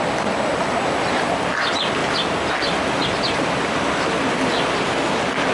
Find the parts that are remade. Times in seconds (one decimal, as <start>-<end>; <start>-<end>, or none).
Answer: none